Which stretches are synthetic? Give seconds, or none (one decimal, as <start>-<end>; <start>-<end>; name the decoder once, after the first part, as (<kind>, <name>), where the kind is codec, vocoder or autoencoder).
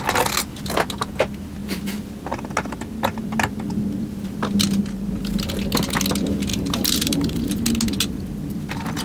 6.5-7.6 (vocoder, BigVGAN v2)